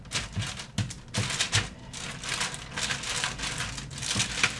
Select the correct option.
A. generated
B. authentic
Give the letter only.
B